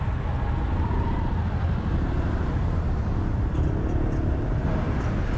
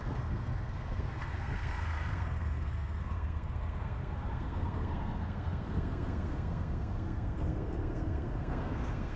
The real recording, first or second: first